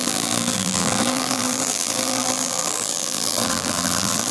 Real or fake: fake